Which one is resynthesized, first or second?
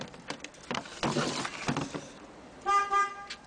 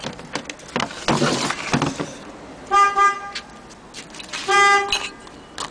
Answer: first